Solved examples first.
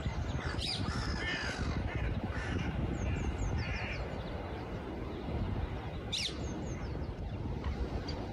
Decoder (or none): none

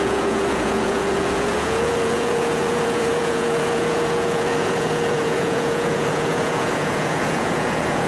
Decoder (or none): vocoder, Vocos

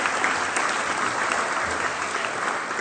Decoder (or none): none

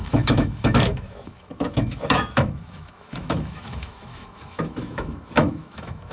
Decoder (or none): autoencoder, DAC-VAE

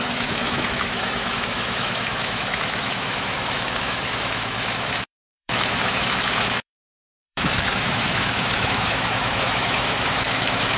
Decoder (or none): autoencoder, DAC-VAE